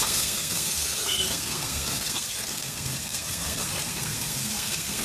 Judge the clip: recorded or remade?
remade